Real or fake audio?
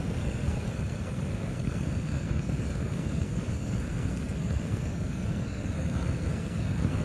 fake